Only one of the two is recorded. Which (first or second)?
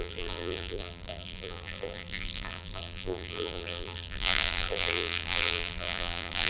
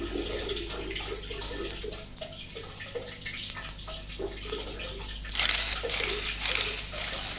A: second